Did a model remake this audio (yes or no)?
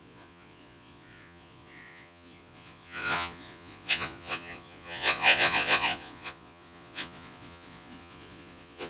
yes